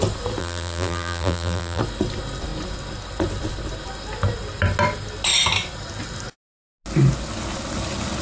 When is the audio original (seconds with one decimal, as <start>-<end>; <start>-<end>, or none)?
0.0-0.4; 1.8-8.2